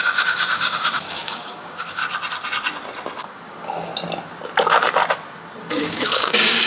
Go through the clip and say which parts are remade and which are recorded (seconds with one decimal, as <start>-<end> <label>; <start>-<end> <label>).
0.0-2.0 remade; 2.0-3.2 recorded; 3.2-3.9 remade; 3.9-5.6 recorded; 5.6-6.7 remade